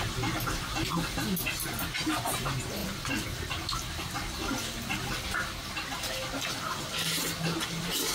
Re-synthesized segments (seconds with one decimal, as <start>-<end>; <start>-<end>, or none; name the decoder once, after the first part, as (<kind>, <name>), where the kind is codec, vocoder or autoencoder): none